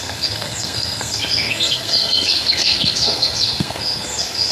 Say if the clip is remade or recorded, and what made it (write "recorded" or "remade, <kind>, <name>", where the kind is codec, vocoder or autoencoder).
remade, codec, SNAC